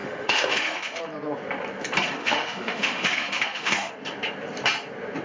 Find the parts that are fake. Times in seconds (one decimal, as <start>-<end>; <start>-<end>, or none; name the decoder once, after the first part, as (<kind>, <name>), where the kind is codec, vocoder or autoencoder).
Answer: 0.0-1.0 (autoencoder, DAC-VAE); 2.2-3.9